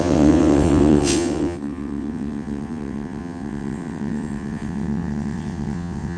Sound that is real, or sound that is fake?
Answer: fake